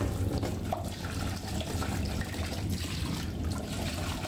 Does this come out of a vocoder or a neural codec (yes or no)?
yes